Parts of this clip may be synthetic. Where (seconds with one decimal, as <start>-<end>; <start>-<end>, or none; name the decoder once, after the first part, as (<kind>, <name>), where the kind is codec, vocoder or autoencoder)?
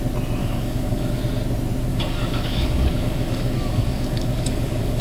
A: 0.4-1.2 (codec, DAC); 1.9-5.0